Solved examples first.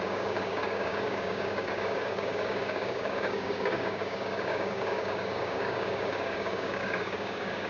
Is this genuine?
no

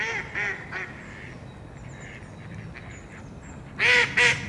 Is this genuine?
yes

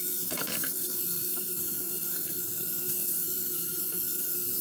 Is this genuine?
no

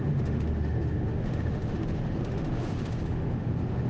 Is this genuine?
no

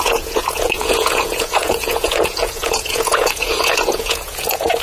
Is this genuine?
no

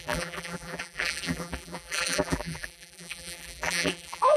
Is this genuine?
no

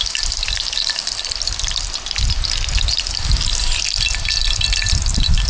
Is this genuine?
yes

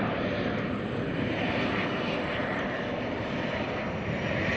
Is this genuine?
yes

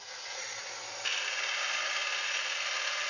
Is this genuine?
yes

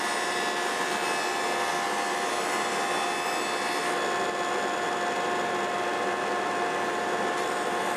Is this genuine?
yes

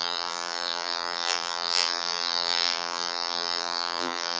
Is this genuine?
no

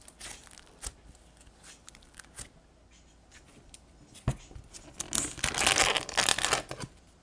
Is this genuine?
yes